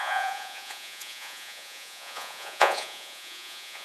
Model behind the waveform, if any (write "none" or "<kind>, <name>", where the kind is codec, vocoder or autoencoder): vocoder, Vocos